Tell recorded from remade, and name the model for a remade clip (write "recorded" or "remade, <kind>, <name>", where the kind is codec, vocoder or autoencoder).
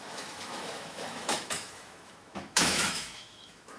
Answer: remade, autoencoder, DAC-VAE